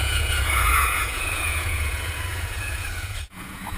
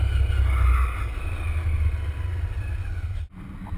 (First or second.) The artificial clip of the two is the first